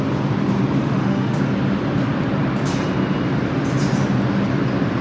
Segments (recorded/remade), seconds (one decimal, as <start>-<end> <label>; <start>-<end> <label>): 0.0-0.8 recorded; 0.8-1.4 remade; 1.4-5.0 recorded